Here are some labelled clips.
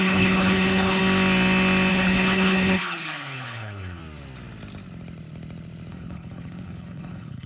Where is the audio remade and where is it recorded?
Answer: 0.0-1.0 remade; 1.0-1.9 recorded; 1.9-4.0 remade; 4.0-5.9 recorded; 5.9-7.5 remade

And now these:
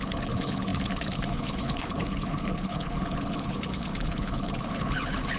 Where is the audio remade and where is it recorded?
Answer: 0.0-5.4 remade

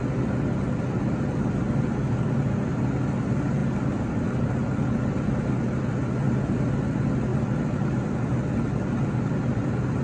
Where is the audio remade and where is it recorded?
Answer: 0.0-10.0 recorded